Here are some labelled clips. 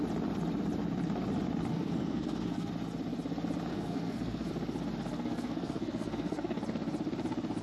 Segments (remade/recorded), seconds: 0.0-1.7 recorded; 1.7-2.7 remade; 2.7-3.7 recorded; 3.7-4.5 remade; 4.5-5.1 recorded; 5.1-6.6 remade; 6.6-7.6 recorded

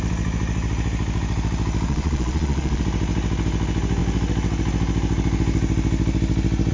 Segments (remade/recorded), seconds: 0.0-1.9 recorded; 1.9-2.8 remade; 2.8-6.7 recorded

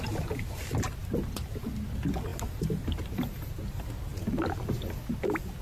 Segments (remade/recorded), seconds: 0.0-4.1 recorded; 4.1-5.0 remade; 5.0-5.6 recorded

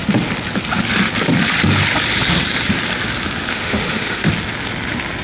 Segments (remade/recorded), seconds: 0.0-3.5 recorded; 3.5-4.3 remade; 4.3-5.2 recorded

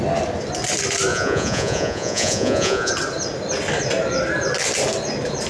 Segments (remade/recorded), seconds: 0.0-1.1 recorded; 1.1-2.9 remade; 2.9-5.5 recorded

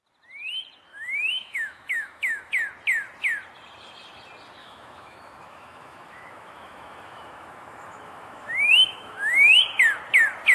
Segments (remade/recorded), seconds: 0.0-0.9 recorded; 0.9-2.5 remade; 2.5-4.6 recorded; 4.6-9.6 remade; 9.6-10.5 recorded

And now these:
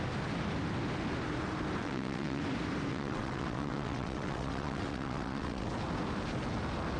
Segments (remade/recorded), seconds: 0.0-1.8 recorded; 1.8-2.4 remade; 2.4-2.9 recorded; 2.9-5.7 remade; 5.7-7.0 recorded